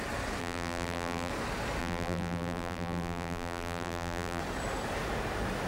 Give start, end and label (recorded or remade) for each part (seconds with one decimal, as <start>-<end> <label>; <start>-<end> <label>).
0.0-0.4 recorded; 0.4-1.3 remade; 1.3-1.8 recorded; 1.8-4.4 remade; 4.4-5.7 recorded